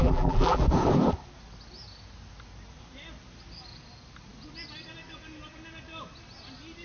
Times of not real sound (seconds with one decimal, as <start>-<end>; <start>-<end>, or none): 0.0-0.6